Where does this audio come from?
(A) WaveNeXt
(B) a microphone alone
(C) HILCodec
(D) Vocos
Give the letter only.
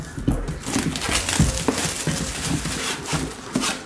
B